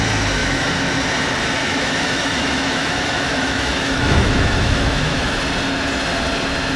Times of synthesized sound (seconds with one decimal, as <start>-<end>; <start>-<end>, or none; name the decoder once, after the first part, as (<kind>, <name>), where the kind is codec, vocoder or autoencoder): 0.4-1.1 (autoencoder, DAC-VAE); 1.6-5.4